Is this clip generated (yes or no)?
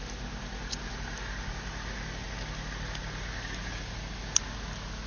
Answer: no